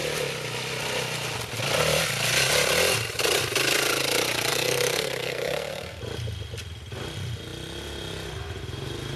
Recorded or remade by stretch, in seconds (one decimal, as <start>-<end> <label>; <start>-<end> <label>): 0.0-4.5 recorded; 4.5-6.0 remade; 6.0-9.2 recorded